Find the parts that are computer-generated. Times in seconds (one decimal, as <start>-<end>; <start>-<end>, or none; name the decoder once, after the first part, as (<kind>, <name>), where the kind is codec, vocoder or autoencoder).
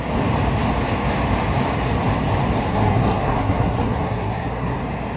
2.7-4.8 (codec, SNAC)